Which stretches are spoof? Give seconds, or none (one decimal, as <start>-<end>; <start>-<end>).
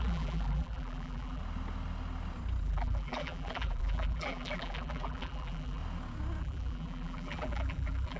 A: 0.0-1.4; 2.6-5.8; 6.4-8.2